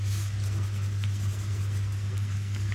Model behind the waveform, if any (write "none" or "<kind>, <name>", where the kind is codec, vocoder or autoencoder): codec, SNAC